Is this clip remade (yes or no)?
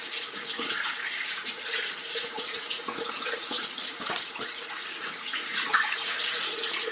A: yes